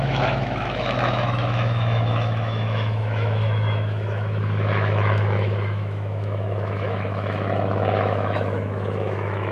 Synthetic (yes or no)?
yes